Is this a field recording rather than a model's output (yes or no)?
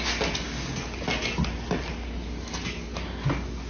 yes